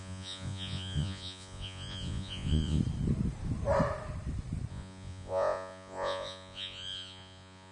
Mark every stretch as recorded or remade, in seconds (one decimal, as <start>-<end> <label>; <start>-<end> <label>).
0.0-2.8 remade; 2.8-4.7 recorded; 4.7-7.7 remade